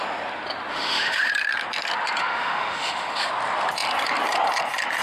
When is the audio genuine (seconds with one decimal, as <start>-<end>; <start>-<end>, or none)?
0.0-0.7; 1.3-2.2; 3.3-5.0